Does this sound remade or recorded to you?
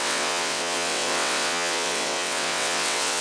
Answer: remade